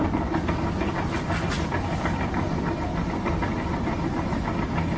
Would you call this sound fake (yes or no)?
no